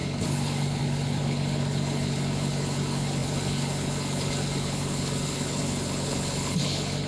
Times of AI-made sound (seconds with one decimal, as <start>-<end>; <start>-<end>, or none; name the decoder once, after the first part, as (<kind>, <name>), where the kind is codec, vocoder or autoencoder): 0.0-7.1 (codec, HILCodec)